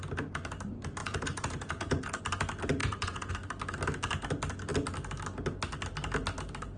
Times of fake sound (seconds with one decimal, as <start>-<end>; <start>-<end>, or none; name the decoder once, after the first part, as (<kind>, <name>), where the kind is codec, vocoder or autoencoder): 1.0-2.2 (vocoder, Vocos); 2.8-3.3